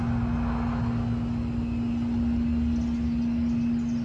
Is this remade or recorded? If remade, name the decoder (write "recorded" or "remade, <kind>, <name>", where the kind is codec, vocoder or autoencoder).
recorded